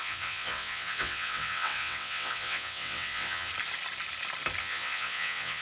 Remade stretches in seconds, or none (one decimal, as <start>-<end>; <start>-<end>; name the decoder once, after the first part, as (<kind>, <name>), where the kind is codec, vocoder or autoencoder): 0.0-3.5 (vocoder, WaveNeXt); 4.6-5.6

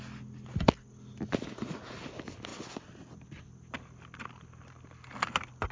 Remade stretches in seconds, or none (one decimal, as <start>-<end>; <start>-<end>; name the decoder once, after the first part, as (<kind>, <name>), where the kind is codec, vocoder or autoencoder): none

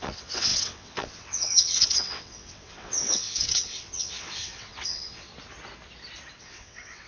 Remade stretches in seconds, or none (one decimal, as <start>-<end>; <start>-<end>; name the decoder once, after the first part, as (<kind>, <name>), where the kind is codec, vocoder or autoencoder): 0.0-5.3 (vocoder, WaveNeXt); 6.4-7.1

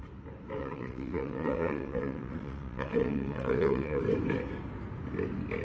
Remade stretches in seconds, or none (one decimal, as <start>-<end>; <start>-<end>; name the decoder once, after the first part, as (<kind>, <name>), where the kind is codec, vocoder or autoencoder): 0.6-4.0 (vocoder, WaveNeXt)